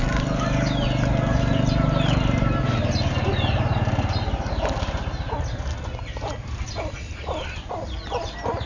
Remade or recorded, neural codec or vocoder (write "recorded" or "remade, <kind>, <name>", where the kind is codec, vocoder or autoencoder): recorded